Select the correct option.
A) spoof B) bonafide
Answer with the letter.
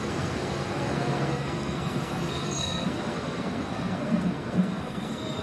A